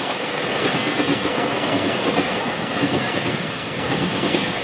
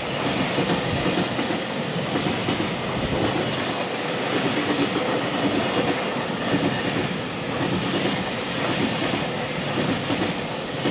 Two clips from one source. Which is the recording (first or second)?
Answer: second